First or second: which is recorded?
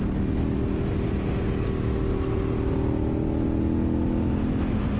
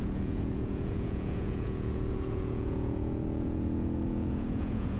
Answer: first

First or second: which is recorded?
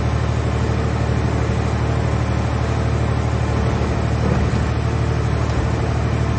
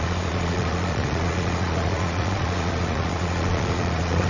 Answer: first